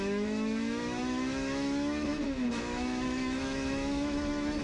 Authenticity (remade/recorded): remade